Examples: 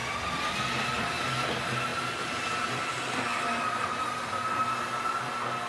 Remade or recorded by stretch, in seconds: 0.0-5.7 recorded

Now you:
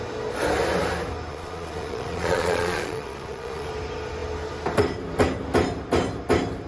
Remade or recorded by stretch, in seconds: 0.0-1.3 recorded; 1.3-3.7 remade; 3.7-6.7 recorded

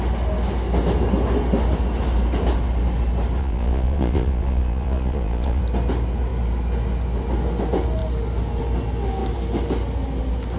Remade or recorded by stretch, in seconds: 0.0-3.4 recorded; 3.4-5.6 remade; 5.6-10.6 recorded

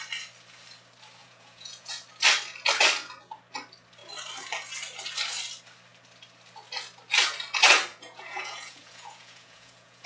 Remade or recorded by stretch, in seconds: 0.0-1.2 recorded; 1.2-1.9 remade; 1.9-7.9 recorded; 7.9-10.1 remade

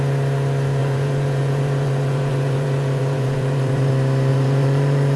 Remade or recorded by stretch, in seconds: 0.0-0.8 recorded; 0.8-3.9 remade; 3.9-4.3 recorded; 4.3-5.2 remade

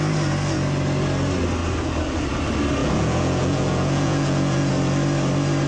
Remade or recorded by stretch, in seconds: 0.0-2.8 recorded; 2.8-4.7 remade; 4.7-5.7 recorded

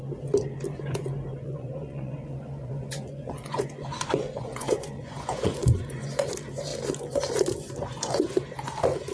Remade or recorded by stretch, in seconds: 0.0-1.3 recorded; 1.3-6.3 remade; 6.3-7.9 recorded; 7.9-8.4 remade; 8.4-9.1 recorded